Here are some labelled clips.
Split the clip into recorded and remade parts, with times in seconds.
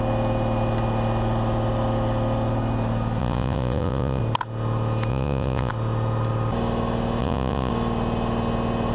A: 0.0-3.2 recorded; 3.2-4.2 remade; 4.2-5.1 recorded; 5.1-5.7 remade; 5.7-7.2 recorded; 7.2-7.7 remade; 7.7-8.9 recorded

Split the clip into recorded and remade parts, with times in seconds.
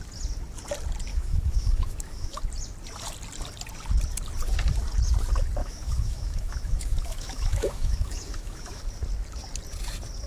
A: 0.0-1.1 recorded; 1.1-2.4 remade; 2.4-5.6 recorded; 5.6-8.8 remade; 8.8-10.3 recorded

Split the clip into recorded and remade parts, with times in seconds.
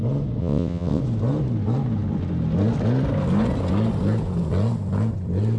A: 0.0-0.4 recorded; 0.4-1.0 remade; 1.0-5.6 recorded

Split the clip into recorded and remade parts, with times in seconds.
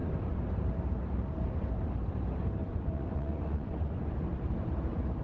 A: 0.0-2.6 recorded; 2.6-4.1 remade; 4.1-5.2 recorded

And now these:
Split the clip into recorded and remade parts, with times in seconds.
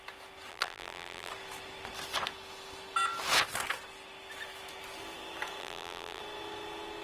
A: 0.0-0.5 recorded; 0.5-1.3 remade; 1.3-5.6 recorded; 5.6-6.2 remade; 6.2-7.0 recorded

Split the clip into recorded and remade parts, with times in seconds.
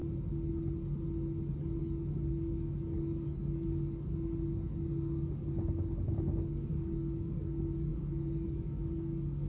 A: 0.0-1.8 recorded; 1.8-9.5 remade